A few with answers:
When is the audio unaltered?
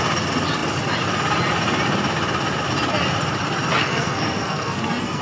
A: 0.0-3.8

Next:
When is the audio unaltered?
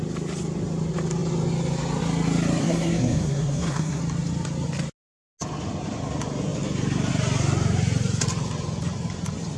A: 0.0-2.6; 4.0-9.6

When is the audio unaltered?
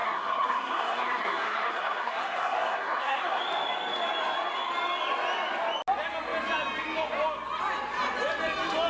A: 3.4-8.9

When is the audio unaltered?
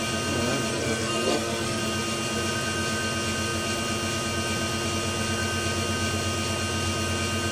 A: 0.0-0.7; 1.8-7.5